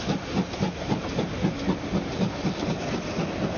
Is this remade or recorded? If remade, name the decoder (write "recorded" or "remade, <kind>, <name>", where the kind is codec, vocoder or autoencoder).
recorded